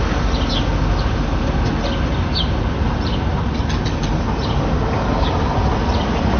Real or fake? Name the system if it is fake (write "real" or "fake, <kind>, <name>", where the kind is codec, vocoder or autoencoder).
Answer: real